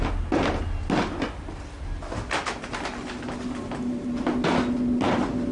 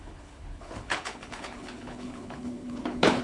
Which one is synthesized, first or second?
second